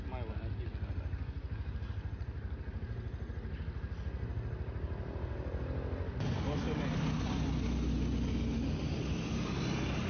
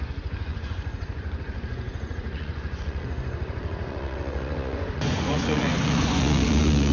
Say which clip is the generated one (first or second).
second